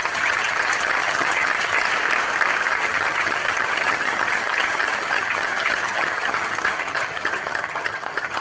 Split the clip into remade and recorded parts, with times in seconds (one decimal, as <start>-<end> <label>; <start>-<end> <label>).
0.0-1.9 remade; 1.9-2.7 recorded; 2.7-8.4 remade